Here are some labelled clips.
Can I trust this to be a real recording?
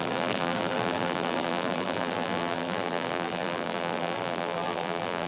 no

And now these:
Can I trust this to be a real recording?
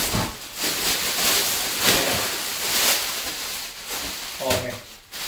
yes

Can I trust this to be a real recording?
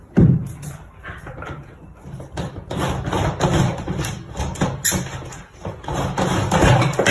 no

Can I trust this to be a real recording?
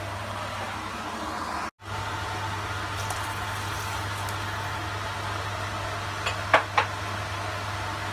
yes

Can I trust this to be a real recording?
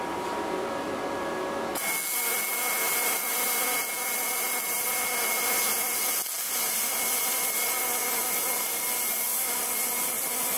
yes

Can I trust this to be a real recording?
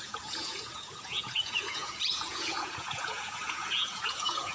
no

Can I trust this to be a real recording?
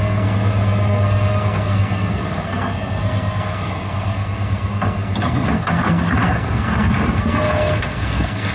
no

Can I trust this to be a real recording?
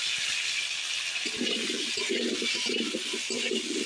yes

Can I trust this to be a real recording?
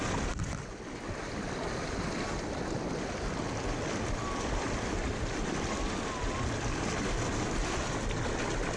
yes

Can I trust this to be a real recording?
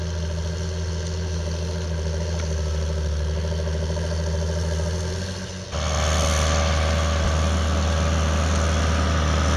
yes